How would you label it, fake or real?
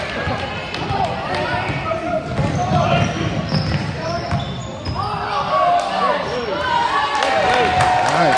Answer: real